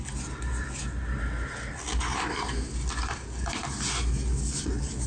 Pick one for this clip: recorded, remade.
recorded